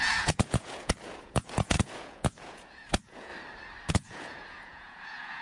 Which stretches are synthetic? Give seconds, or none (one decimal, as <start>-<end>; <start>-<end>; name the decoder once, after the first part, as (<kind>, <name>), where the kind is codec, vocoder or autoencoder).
0.0-3.3 (vocoder, Vocos); 3.9-5.4

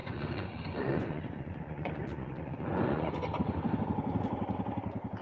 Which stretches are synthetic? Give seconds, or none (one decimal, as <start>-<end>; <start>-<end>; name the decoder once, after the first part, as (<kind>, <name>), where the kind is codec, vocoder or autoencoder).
0.0-3.1 (vocoder, Vocos)

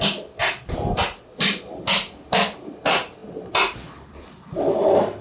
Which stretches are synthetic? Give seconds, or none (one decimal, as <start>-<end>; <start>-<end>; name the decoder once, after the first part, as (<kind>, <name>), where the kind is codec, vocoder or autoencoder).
none

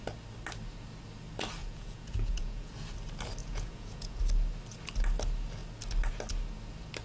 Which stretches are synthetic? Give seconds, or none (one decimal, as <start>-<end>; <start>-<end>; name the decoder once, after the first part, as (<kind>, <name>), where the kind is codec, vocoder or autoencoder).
1.6-2.7 (vocoder, Vocos); 3.4-4.2

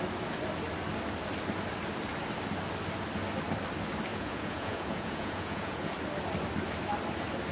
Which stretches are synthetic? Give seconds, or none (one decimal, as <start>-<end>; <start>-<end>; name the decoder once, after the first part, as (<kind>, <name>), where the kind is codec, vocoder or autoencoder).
4.1-5.9 (vocoder, Vocos)

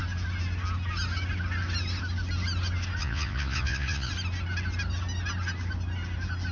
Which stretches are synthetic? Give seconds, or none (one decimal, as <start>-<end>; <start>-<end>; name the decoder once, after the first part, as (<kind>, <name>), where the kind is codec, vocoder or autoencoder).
3.0-4.1 (vocoder, Vocos)